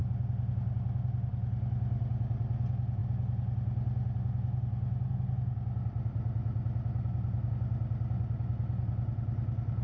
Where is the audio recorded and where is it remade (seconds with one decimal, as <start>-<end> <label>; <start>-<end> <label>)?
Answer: 0.0-9.8 recorded